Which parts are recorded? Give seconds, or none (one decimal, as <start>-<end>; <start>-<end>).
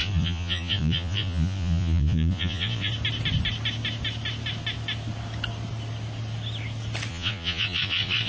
2.9-7.1